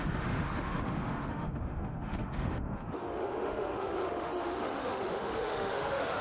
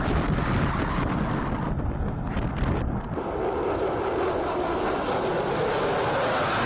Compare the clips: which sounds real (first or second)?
second